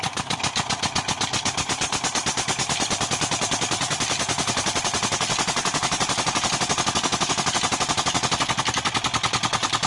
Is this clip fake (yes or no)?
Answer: yes